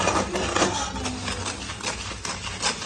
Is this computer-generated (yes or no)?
no